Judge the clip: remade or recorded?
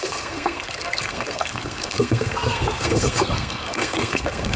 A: remade